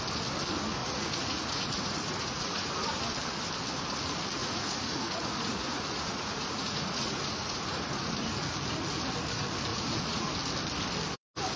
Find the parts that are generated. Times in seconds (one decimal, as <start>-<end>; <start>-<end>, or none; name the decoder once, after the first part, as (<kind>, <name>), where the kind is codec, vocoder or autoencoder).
0.8-3.0 (vocoder, Vocos); 4.4-8.3; 9.7-10.3